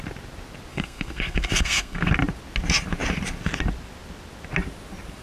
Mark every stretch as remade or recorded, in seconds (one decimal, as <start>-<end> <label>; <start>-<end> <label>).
0.0-0.7 recorded; 0.7-2.1 remade; 2.1-5.2 recorded